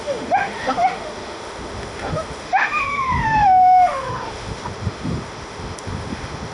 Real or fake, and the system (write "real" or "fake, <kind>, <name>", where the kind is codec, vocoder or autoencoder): fake, autoencoder, DAC-VAE